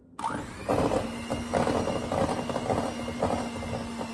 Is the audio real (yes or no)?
yes